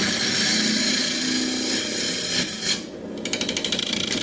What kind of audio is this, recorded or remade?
recorded